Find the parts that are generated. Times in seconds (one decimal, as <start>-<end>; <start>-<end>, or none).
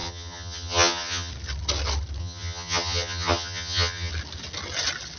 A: 0.0-1.3; 2.2-4.1